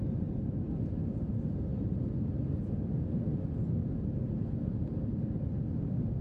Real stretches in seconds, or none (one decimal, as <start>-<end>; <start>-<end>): 0.0-6.2